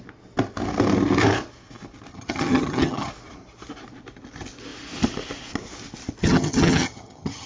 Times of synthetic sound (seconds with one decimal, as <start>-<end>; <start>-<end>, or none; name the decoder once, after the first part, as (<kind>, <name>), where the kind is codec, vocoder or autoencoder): 2.1-3.1 (vocoder, HiFi-GAN); 6.2-7.5